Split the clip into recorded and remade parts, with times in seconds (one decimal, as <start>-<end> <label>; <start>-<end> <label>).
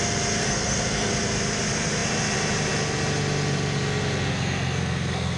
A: 0.0-0.4 recorded; 0.4-1.1 remade; 1.1-4.3 recorded; 4.3-5.4 remade